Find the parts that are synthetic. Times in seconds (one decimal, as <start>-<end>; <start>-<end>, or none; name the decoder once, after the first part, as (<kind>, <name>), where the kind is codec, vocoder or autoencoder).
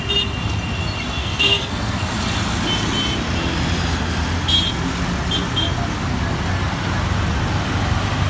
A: 1.2-2.0 (codec, SNAC)